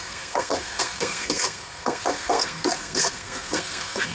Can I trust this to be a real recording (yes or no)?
no